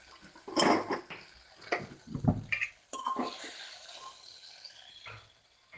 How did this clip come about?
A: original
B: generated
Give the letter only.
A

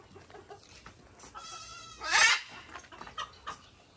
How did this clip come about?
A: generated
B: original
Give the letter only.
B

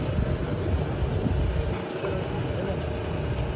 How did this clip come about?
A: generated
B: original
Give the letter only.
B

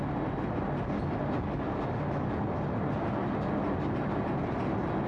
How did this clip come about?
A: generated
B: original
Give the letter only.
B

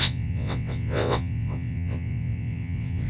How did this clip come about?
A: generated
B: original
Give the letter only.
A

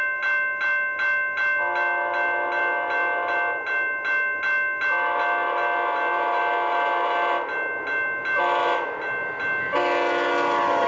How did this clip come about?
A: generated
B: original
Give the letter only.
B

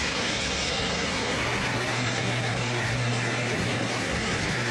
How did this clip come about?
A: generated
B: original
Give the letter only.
A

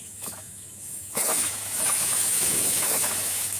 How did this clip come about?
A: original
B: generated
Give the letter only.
B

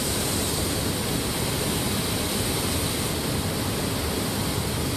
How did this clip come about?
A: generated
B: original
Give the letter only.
B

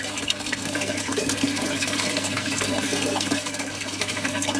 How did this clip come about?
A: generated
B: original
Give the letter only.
A